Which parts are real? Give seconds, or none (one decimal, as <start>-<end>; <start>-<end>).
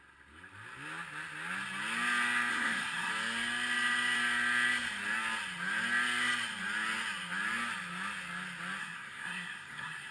0.0-2.5; 3.1-8.8